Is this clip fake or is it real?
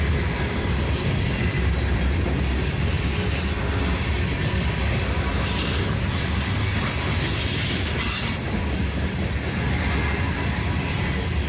real